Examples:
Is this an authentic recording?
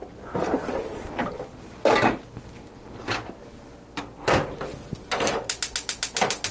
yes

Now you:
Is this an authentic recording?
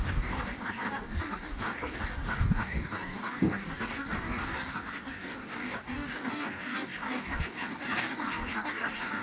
no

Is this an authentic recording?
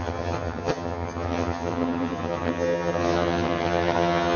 no